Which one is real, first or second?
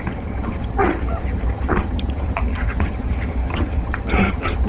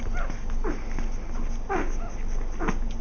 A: second